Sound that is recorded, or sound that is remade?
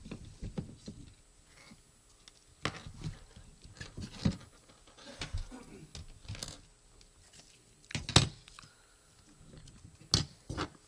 recorded